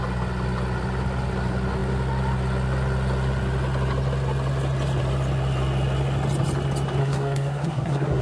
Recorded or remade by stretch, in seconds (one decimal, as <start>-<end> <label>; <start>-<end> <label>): 0.0-7.0 recorded; 7.0-8.2 remade